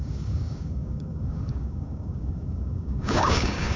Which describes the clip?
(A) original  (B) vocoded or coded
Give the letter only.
B